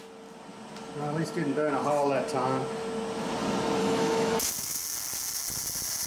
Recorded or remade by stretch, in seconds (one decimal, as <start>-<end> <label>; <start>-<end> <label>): 0.0-3.8 recorded; 3.8-4.5 remade; 4.5-6.1 recorded